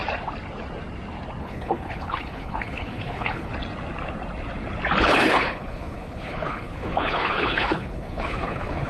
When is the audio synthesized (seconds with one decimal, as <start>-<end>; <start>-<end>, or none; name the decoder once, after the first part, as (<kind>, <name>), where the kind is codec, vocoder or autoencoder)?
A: 1.4-3.5 (codec, HILCodec); 5.0-8.9